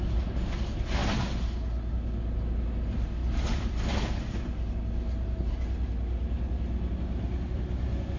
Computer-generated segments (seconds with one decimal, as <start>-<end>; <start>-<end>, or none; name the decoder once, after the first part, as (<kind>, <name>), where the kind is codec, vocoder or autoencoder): none